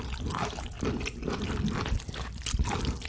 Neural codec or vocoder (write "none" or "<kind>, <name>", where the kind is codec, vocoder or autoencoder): none